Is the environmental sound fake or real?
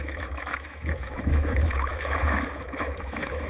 fake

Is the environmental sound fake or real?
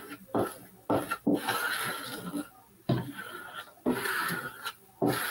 real